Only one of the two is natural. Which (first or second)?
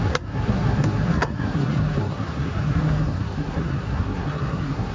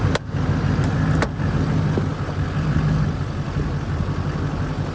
second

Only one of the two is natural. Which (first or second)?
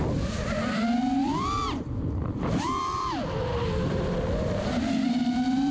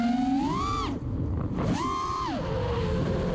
second